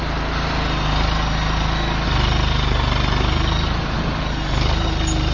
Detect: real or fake real